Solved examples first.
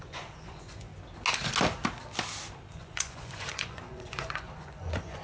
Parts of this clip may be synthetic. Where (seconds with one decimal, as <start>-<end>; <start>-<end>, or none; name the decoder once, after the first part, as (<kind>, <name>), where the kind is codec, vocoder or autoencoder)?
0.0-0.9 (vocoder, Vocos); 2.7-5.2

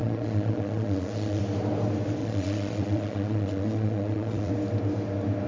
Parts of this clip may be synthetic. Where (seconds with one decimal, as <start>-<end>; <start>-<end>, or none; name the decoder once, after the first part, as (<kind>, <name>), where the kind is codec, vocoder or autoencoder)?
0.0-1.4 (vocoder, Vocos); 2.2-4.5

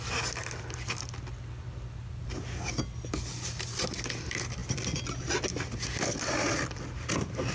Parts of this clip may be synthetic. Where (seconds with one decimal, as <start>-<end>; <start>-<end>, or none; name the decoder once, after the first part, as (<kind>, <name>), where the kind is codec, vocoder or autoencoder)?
none

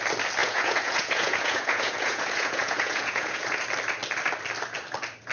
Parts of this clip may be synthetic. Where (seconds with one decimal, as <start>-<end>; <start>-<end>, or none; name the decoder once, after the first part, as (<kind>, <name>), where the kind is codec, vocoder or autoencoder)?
0.4-3.6 (vocoder, Vocos)

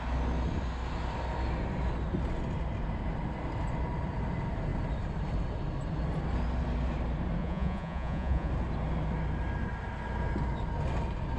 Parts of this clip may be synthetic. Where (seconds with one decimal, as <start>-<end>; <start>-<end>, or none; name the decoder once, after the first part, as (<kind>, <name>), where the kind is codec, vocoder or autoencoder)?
7.4-8.5 (vocoder, Vocos)

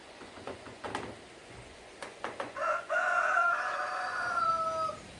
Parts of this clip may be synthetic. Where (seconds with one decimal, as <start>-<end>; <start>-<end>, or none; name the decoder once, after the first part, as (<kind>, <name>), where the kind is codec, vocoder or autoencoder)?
0.0-0.9 (vocoder, Vocos); 1.4-4.5